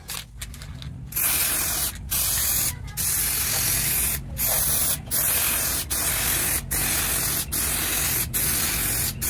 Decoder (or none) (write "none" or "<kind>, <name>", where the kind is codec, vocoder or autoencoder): none